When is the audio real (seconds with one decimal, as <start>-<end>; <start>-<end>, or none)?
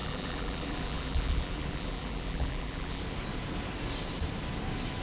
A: 3.0-5.0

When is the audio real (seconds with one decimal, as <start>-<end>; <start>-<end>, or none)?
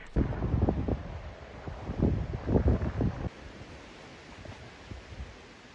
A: 0.0-5.7